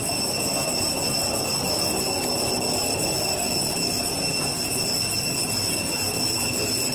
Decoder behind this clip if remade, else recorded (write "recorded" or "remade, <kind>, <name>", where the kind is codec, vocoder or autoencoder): recorded